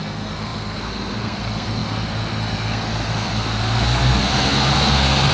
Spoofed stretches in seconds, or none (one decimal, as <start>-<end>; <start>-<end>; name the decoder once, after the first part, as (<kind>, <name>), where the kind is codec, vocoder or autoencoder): 0.0-5.3 (codec, SNAC)